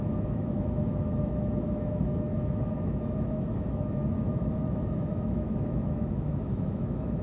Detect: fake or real fake